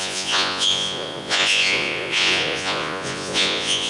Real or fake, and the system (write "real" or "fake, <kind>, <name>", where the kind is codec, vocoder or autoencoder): fake, vocoder, Vocos